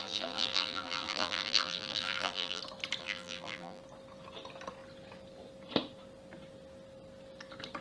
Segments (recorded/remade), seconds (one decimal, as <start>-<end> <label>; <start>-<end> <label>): 0.0-2.6 remade; 2.6-3.0 recorded; 3.0-3.8 remade; 3.8-7.8 recorded